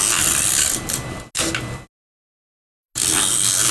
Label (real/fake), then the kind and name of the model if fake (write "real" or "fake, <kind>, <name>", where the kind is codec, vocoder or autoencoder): real